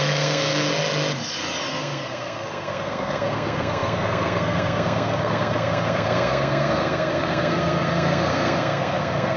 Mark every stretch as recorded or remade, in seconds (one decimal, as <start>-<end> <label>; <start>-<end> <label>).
0.0-0.7 remade; 0.7-1.7 recorded; 1.7-9.4 remade